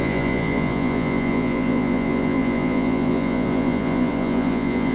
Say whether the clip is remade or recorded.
remade